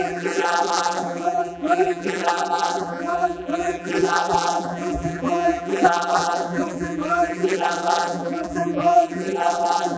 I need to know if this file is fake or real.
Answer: fake